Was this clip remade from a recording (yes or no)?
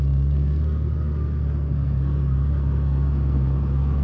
yes